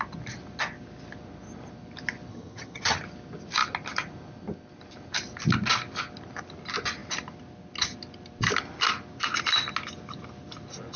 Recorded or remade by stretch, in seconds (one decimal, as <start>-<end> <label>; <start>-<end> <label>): 0.0-2.3 recorded; 2.3-3.0 remade; 3.0-11.0 recorded